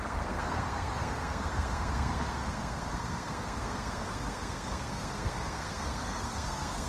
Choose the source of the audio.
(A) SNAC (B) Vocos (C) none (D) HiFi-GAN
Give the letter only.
A